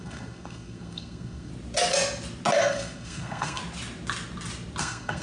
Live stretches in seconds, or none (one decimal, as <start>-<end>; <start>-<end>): 1.5-2.6; 3.6-4.8

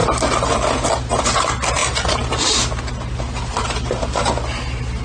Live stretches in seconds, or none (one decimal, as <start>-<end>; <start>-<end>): 0.0-5.0